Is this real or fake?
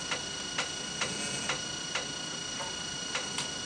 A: real